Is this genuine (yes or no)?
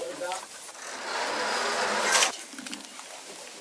yes